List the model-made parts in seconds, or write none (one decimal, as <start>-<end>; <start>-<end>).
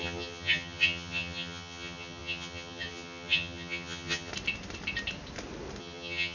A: 0.0-4.3; 5.8-6.3